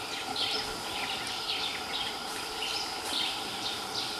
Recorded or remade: remade